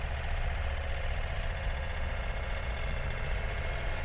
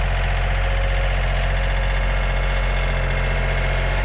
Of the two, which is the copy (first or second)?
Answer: first